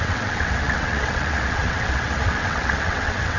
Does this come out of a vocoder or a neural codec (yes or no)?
yes